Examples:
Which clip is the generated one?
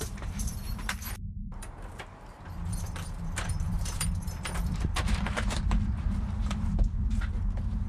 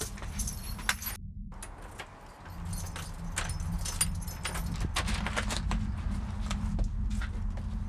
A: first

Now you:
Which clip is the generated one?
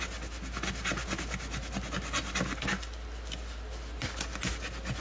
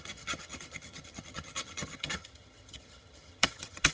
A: second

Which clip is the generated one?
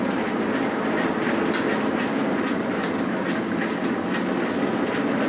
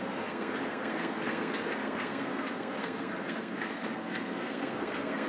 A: second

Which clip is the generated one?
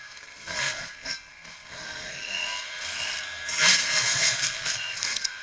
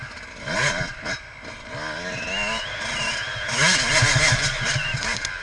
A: first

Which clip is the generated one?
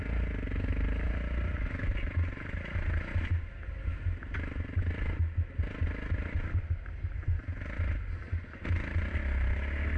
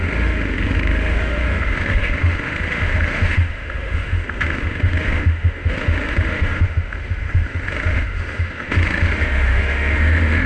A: second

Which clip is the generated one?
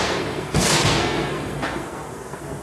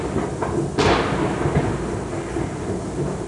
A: first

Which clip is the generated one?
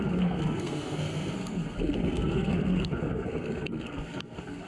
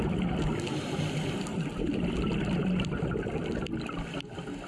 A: first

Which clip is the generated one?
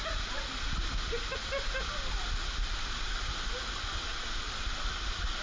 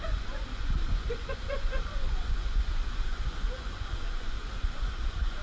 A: second